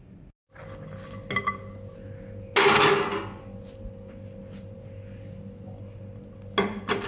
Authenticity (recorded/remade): recorded